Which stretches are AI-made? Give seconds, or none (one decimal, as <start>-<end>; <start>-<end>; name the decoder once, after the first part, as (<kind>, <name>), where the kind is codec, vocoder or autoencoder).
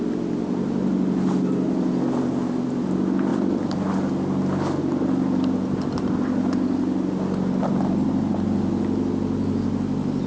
none